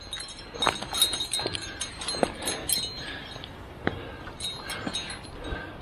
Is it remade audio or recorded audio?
recorded